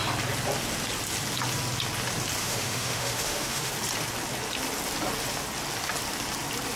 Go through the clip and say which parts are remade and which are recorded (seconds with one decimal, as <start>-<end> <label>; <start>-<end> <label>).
0.0-2.4 recorded; 2.4-3.7 remade; 3.7-6.8 recorded